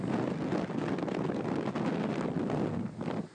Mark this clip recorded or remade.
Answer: recorded